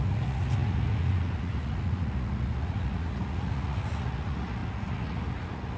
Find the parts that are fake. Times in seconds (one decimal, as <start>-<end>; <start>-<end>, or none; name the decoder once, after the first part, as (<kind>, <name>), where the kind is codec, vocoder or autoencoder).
0.0-5.8 (vocoder, Vocos)